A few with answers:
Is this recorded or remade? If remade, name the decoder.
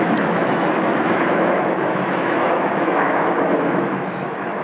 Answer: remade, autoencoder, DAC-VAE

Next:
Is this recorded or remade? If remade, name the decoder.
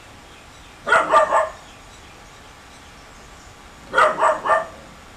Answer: recorded